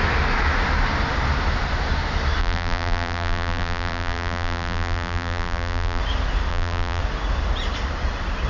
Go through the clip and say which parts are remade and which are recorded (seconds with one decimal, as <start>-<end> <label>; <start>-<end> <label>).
0.0-2.4 recorded; 2.4-6.0 remade; 6.0-6.5 recorded; 6.5-7.0 remade; 7.0-8.5 recorded